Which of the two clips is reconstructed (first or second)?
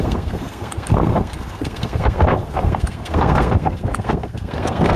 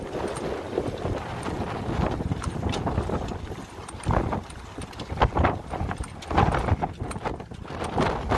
first